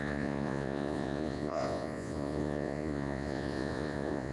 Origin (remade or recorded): remade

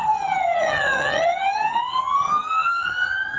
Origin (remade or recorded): remade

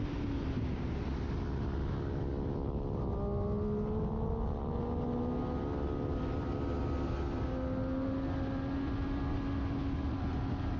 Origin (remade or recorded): recorded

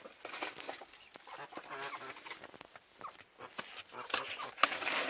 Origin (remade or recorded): recorded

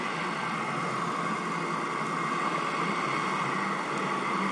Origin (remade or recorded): recorded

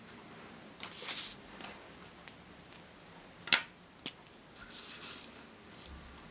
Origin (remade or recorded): recorded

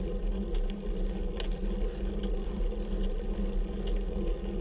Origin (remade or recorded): recorded